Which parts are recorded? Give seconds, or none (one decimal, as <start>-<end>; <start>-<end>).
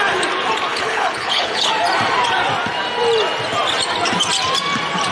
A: 0.0-0.7; 1.7-5.1